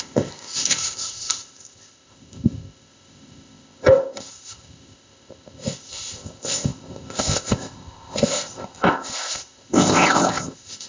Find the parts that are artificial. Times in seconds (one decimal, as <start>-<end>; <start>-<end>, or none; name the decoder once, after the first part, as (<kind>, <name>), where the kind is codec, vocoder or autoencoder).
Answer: 0.0-10.9 (codec, ZipCodec)